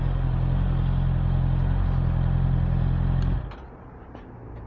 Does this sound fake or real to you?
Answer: real